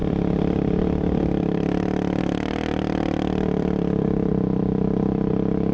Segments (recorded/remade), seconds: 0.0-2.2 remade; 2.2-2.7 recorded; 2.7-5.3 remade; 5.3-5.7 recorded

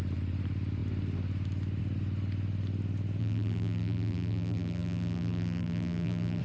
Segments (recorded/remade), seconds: 0.0-3.2 recorded; 3.2-6.4 remade

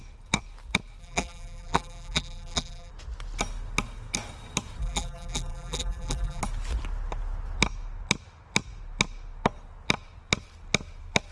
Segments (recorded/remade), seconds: 0.0-1.0 recorded; 1.0-2.9 remade; 2.9-4.8 recorded; 4.8-6.4 remade; 6.4-11.3 recorded

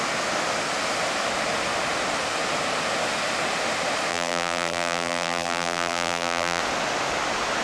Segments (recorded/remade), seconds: 0.0-4.1 recorded; 4.1-6.6 remade; 6.6-7.6 recorded

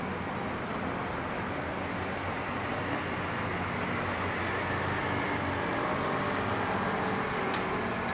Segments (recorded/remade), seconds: 0.0-1.0 recorded; 1.0-1.7 remade; 1.7-8.1 recorded

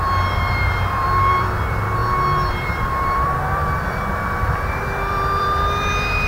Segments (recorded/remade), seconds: 0.0-2.0 remade; 2.0-2.5 recorded; 2.5-6.3 remade

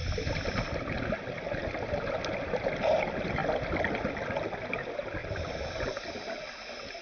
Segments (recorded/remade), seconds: 0.0-1.0 remade; 1.0-3.4 recorded; 3.4-4.1 remade; 4.1-5.2 recorded; 5.2-6.1 remade; 6.1-7.0 recorded